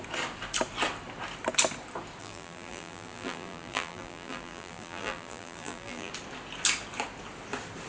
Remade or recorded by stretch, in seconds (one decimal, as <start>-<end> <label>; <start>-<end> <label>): 0.0-2.2 recorded; 2.2-6.1 remade; 6.1-7.9 recorded